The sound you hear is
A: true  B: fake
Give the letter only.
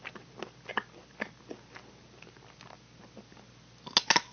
A